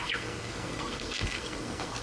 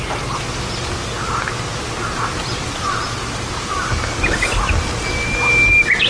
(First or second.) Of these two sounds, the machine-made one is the first